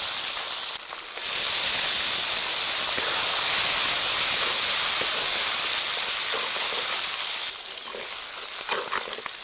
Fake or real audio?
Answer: real